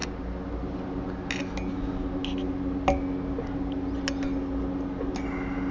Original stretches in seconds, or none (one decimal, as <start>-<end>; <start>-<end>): 0.0-5.7